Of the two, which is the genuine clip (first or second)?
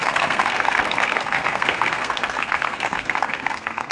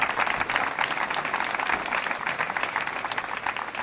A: second